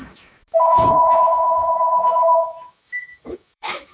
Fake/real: fake